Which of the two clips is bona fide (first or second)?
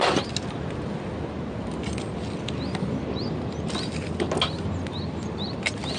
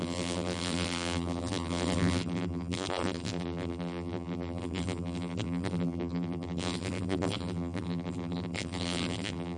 first